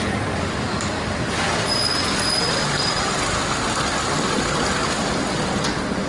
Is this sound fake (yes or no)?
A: no